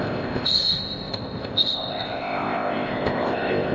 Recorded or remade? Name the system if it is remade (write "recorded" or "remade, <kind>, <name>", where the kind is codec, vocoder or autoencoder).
remade, codec, ZipCodec